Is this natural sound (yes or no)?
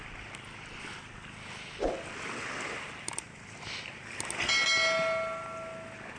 yes